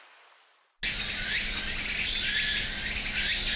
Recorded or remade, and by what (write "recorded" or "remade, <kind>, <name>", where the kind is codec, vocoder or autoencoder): recorded